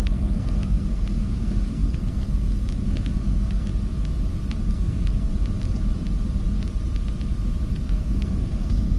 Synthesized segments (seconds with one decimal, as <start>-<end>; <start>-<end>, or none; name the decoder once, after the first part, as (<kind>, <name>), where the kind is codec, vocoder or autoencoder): 0.0-3.7 (codec, SNAC); 4.7-5.3; 7.7-9.0